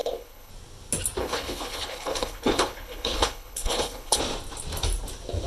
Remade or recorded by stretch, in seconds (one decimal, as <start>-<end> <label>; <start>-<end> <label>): 0.0-0.5 remade; 0.5-1.2 recorded; 1.2-4.2 remade; 4.2-5.5 recorded